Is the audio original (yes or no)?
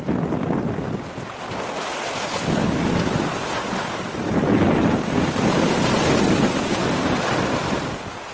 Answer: yes